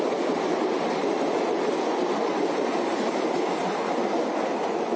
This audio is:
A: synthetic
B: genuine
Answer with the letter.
B